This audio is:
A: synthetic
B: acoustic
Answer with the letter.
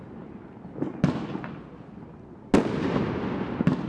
B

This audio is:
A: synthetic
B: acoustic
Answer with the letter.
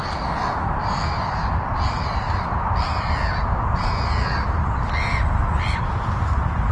B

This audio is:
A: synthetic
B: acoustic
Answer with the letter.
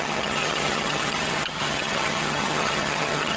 A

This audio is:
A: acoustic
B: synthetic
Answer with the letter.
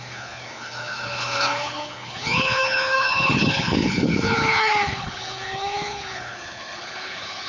B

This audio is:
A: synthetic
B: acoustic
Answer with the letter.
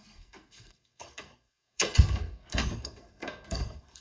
A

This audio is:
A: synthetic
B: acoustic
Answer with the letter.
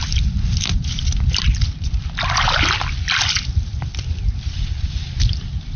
B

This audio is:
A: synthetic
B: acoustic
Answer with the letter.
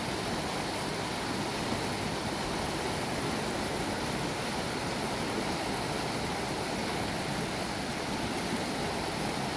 B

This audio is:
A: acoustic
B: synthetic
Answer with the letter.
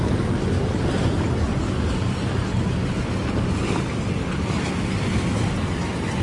A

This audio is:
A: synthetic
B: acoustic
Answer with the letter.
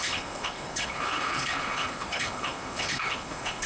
A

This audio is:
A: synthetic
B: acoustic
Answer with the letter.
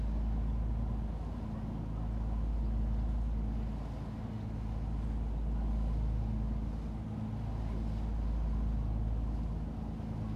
B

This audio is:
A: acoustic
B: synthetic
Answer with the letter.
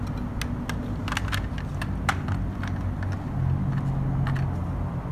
A